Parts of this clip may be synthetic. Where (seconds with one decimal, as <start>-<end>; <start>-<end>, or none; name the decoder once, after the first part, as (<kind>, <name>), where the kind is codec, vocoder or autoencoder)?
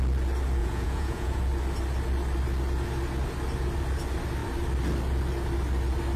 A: 0.6-1.4 (vocoder, Vocos)